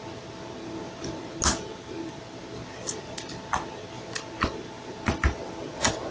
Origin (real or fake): real